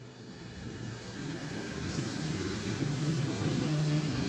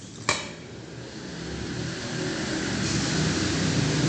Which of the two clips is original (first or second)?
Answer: second